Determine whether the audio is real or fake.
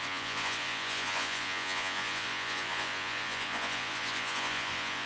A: fake